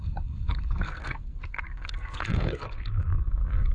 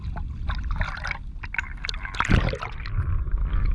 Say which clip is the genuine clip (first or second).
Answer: second